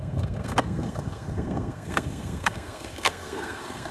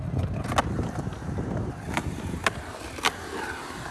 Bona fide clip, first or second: second